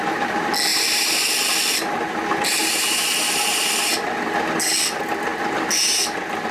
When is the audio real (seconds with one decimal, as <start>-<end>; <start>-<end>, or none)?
0.0-0.7; 1.3-2.6; 3.6-6.5